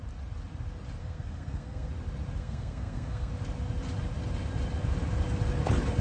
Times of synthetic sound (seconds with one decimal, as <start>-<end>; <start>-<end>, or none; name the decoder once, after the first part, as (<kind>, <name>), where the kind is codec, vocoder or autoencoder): 1.0-1.9 (codec, SNAC); 2.4-3.3